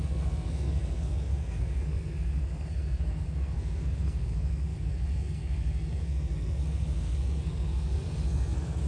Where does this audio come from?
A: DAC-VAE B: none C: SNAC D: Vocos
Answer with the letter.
C